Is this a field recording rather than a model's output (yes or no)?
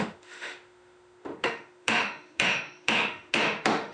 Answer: no